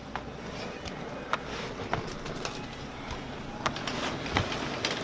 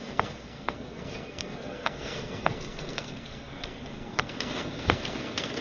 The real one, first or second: first